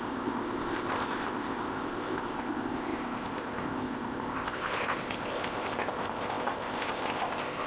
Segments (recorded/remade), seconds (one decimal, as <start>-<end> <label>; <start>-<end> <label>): 0.0-7.7 remade